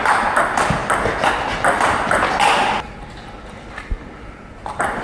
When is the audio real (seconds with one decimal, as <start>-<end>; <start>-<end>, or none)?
0.0-5.0